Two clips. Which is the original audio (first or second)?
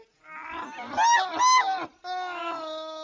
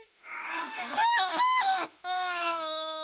first